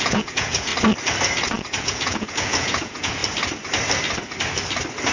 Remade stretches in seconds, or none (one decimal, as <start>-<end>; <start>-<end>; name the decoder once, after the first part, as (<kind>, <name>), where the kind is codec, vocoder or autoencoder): 0.0-0.7 (vocoder, Vocos); 1.8-3.2

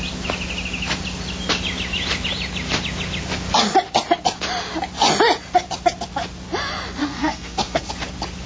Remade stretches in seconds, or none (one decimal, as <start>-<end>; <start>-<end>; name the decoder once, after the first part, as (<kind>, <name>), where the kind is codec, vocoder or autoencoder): 7.0-7.9 (codec, SNAC)

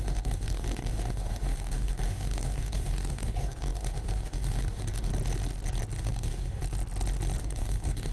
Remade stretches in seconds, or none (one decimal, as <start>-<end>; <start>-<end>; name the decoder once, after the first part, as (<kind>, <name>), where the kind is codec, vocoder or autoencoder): 0.0-5.1 (codec, DAC); 6.0-6.6; 7.4-8.1